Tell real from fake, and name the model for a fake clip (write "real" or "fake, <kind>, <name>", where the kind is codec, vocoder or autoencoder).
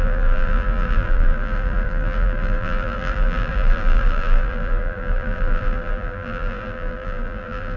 fake, vocoder, BigVGAN v2